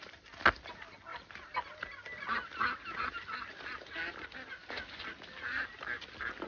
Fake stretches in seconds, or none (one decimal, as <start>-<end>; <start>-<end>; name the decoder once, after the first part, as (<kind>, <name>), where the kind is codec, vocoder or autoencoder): none